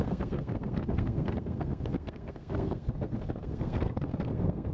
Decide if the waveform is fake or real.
fake